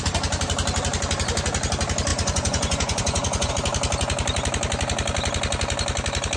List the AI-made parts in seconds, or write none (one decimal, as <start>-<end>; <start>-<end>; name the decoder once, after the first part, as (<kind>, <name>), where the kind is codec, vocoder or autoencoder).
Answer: 2.1-3.5 (vocoder, Vocos)